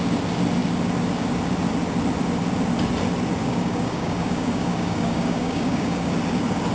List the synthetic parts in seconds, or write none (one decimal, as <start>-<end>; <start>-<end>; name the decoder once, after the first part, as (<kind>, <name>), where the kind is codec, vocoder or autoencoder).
3.4-6.1 (codec, DAC)